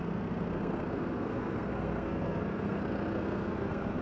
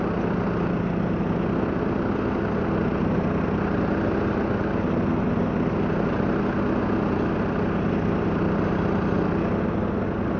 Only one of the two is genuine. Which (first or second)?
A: second